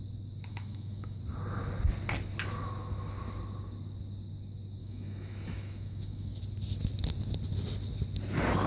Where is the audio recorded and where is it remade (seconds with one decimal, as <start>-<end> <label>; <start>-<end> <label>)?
0.0-0.5 recorded; 0.5-1.2 remade; 1.2-4.8 recorded; 4.8-6.4 remade; 6.4-8.7 recorded